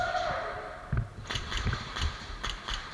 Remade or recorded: remade